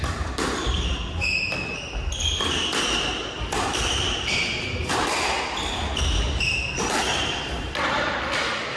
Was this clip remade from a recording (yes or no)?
no